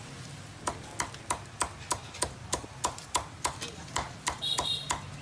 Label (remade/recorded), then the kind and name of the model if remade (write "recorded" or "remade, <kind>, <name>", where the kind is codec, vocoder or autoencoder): recorded